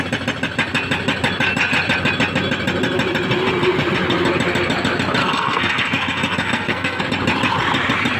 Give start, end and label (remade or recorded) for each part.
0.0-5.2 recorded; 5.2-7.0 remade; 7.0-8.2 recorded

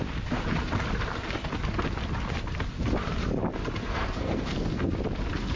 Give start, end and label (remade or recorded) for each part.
0.0-3.8 recorded; 3.8-4.9 remade; 4.9-5.6 recorded

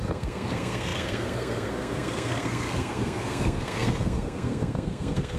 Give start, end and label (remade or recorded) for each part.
0.0-5.4 remade

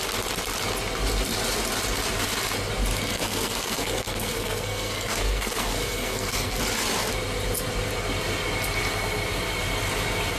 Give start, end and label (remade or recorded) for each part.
0.0-3.1 recorded; 3.1-6.6 remade; 6.6-10.4 recorded